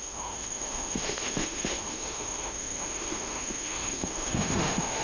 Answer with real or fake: fake